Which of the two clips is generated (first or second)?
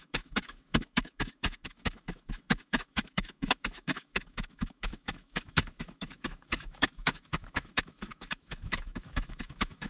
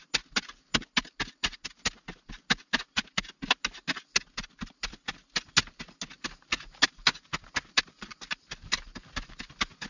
first